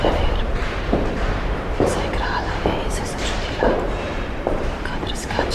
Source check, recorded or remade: remade